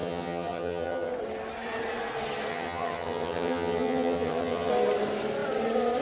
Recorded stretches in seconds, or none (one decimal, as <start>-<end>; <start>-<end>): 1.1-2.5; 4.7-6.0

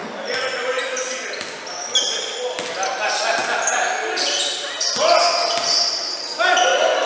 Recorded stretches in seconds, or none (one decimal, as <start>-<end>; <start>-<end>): 0.0-7.1

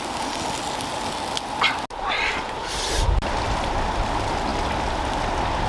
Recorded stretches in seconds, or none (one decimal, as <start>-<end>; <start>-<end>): 0.0-5.7